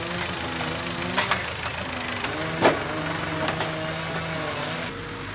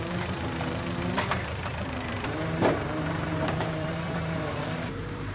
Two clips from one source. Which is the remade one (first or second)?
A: second